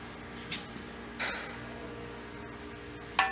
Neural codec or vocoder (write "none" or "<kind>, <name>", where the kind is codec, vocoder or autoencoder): none